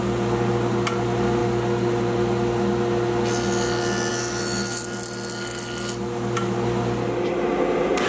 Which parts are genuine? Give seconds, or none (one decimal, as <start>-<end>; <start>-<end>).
0.0-8.1